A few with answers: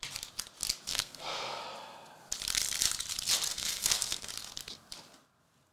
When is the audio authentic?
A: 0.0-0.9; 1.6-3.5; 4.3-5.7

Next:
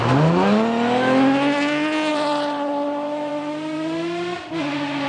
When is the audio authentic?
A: 0.0-2.1; 3.3-5.1

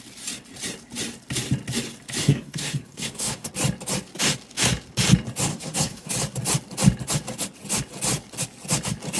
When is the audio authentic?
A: 0.0-2.2; 3.5-5.5; 6.1-9.2

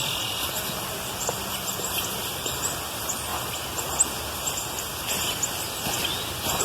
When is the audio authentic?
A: 0.0-6.6